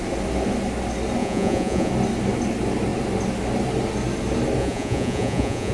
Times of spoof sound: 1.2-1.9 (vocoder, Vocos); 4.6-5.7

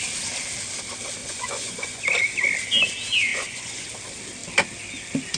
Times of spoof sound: 1.2-2.0 (vocoder, Vocos); 3.3-3.9

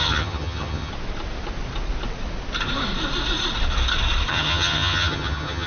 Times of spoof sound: 0.0-0.9 (vocoder, HiFi-GAN); 4.3-5.7

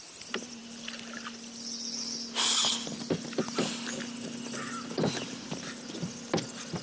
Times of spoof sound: none

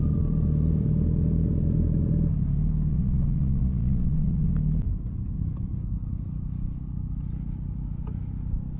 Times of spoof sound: 2.9-4.5 (vocoder, Vocos)

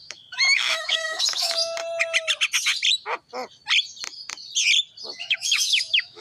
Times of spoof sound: 0.0-1.6 (autoencoder, DAC-VAE); 5.2-6.2